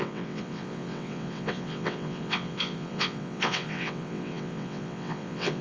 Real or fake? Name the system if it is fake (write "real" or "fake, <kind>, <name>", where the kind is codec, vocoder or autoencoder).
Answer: fake, vocoder, WaveNeXt